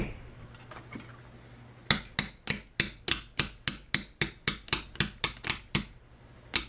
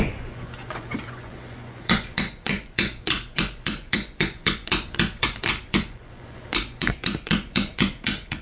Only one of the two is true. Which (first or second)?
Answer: first